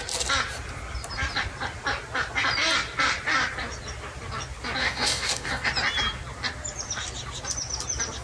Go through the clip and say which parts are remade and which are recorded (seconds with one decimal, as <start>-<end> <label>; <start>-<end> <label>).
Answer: 0.0-4.8 recorded; 4.8-5.7 remade; 5.7-8.2 recorded